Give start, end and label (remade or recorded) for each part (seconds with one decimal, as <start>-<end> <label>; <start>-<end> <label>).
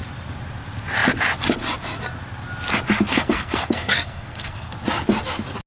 0.0-3.1 recorded; 3.1-4.7 remade; 4.7-5.7 recorded